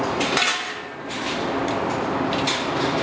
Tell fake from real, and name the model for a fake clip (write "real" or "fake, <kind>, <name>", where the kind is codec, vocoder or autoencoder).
real